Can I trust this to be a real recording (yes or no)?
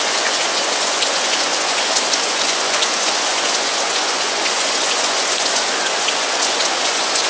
no